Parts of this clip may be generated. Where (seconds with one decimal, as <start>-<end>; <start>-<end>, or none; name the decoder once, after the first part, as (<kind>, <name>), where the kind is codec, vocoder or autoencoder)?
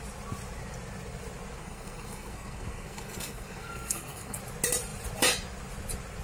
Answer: 1.6-4.4 (codec, SNAC)